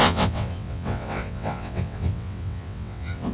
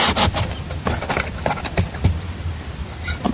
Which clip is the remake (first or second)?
first